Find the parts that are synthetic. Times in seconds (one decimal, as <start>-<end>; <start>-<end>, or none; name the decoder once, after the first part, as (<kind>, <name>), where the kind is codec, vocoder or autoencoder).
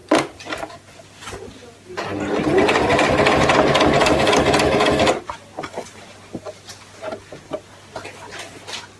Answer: none